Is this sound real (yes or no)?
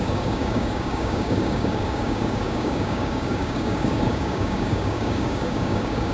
no